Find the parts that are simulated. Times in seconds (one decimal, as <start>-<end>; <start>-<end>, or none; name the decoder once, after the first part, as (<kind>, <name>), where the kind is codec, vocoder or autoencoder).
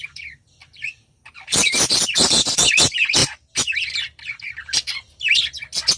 none